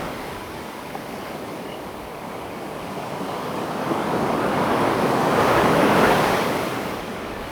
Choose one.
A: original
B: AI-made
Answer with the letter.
B